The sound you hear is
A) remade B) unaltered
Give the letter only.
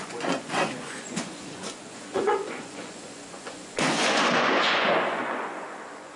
A